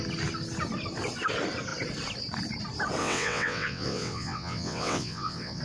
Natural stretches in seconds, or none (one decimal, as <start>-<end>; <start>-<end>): 0.0-3.0